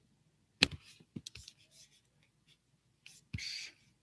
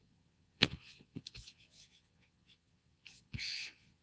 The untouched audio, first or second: first